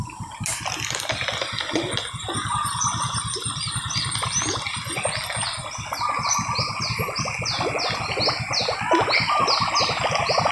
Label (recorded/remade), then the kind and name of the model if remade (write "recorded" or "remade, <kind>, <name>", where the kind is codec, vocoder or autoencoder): recorded